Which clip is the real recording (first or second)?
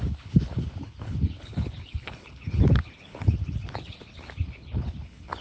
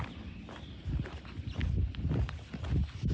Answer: second